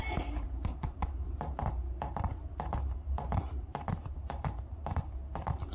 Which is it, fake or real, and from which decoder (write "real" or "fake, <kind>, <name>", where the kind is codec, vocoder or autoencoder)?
fake, vocoder, BigVGAN v2